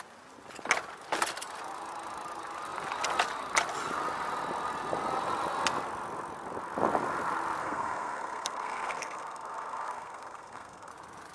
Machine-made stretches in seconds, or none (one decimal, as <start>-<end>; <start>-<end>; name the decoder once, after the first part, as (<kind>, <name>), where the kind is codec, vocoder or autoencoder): 7.6-10.9 (codec, SNAC)